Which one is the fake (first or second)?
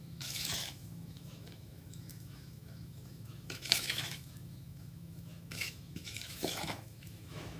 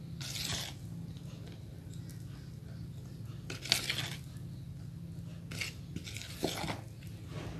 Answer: first